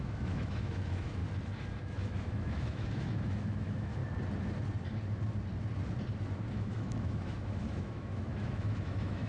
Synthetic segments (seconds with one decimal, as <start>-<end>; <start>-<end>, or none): 0.0-1.2; 1.8-4.0; 6.5-9.3